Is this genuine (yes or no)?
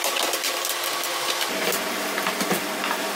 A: yes